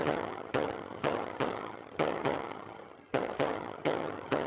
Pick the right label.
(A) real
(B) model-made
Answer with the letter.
B